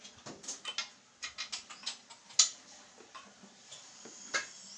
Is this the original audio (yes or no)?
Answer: yes